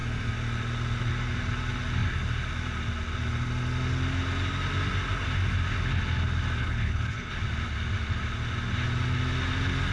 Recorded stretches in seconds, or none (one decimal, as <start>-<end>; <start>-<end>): 0.0-6.6; 7.3-9.9